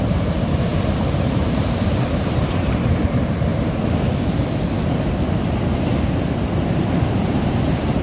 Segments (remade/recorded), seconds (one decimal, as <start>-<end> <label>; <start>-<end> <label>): 0.0-3.5 remade; 3.5-7.1 recorded; 7.1-8.0 remade